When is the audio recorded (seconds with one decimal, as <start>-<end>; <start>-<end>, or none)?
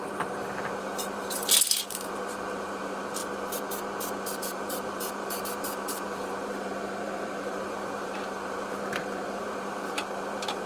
3.2-4.1